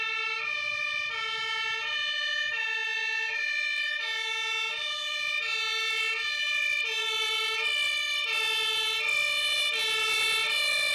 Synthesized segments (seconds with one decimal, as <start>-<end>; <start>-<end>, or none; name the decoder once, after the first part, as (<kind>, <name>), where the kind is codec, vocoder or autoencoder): 7.0-8.2 (vocoder, BigVGAN v2)